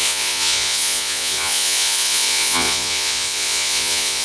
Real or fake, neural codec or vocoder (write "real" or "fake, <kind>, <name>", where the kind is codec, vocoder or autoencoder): fake, vocoder, Vocos